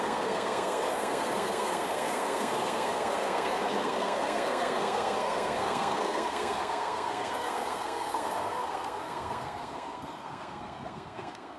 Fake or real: fake